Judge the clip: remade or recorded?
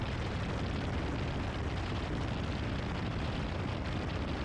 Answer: recorded